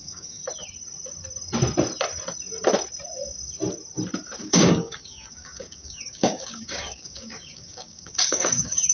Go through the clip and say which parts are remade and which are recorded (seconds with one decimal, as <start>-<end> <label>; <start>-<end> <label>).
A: 0.0-0.4 remade; 0.4-4.4 recorded; 4.4-8.9 remade

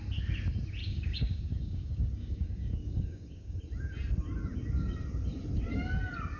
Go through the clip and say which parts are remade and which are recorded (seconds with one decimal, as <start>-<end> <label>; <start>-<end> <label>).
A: 0.0-0.8 recorded; 0.8-3.6 remade; 3.6-6.4 recorded

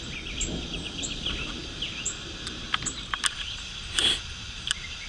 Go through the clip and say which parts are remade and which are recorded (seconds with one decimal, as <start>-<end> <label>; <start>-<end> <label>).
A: 0.0-5.1 recorded

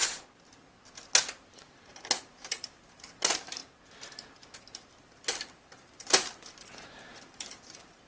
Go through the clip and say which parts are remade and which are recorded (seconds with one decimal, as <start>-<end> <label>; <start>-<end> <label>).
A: 0.0-1.2 recorded; 1.2-3.6 remade; 3.6-4.7 recorded; 4.7-8.1 remade

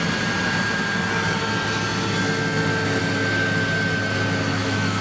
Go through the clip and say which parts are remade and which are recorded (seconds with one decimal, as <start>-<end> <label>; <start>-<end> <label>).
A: 0.0-4.5 recorded; 4.5-5.0 remade

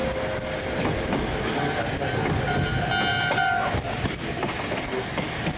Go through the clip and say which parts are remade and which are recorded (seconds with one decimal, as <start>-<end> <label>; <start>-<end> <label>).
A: 0.0-3.1 recorded; 3.1-4.1 remade; 4.1-5.6 recorded

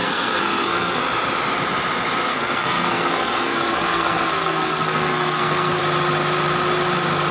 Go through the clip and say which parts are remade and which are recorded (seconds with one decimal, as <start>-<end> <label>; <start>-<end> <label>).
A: 0.0-1.0 remade; 1.0-2.3 recorded; 2.3-5.8 remade; 5.8-7.3 recorded

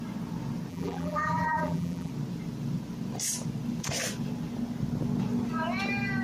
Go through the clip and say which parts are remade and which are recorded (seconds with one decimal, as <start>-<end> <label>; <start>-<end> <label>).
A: 0.0-0.7 recorded; 0.7-2.1 remade; 2.1-6.2 recorded